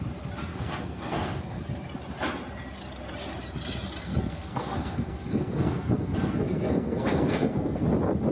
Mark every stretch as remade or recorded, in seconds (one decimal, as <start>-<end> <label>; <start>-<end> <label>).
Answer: 0.0-0.5 recorded; 0.5-1.6 remade; 1.6-4.0 recorded; 4.0-7.8 remade; 7.8-8.3 recorded